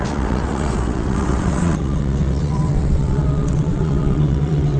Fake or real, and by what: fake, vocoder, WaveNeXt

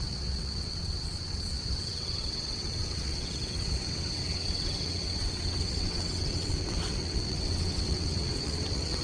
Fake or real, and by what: fake, vocoder, WaveNeXt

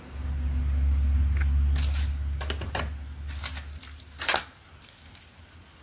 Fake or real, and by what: real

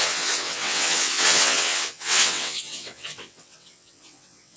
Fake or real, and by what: fake, vocoder, WaveNeXt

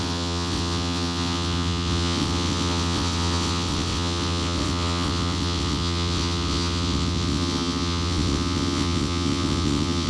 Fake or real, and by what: fake, vocoder, WaveNeXt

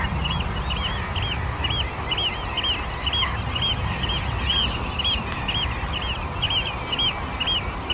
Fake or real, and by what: real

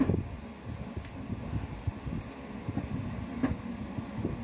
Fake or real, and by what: real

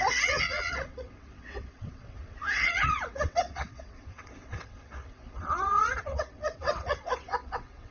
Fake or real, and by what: fake, vocoder, WaveNeXt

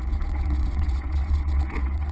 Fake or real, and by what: fake, vocoder, WaveNeXt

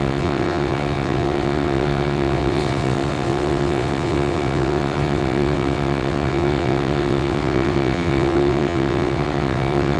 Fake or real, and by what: fake, vocoder, WaveNeXt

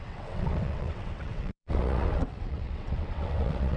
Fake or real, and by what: fake, vocoder, WaveNeXt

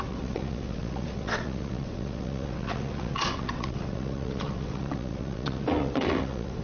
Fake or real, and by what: fake, vocoder, WaveNeXt